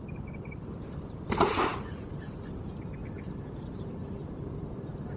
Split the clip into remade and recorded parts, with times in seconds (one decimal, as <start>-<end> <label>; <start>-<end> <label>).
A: 0.0-5.2 recorded